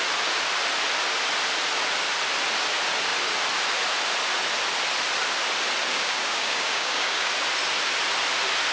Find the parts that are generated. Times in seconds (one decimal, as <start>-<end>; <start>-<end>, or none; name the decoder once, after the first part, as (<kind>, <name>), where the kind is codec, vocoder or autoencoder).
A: 5.9-7.3 (codec, DAC)